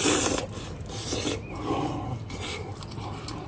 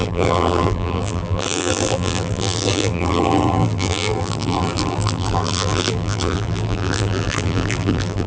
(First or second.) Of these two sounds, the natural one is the first